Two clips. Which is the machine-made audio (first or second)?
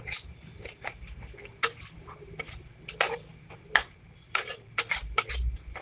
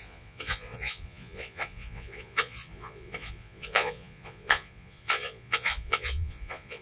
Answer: second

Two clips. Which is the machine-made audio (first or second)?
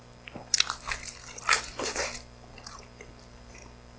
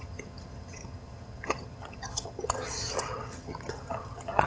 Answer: second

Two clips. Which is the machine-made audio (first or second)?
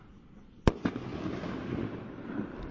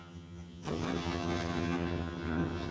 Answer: second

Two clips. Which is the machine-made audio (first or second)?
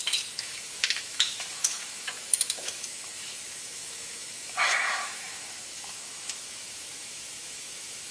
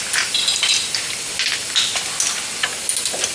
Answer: first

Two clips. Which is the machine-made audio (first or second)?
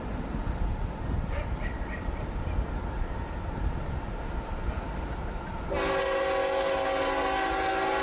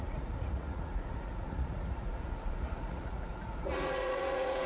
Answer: second